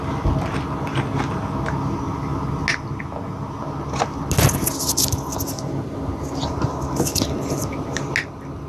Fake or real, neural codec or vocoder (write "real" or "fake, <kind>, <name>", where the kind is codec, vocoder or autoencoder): real